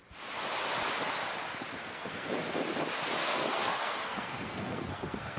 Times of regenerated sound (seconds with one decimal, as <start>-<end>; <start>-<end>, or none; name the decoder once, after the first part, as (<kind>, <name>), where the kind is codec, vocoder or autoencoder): 1.8-2.3 (codec, SNAC); 3.2-5.4